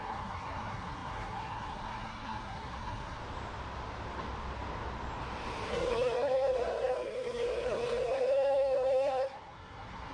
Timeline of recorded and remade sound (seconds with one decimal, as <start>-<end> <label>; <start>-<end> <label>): 0.0-3.2 remade; 3.2-5.7 recorded; 5.7-10.1 remade